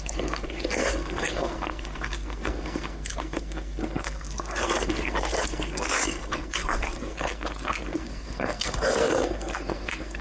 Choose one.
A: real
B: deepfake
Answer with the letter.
B